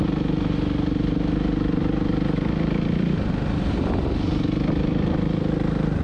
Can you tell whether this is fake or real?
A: real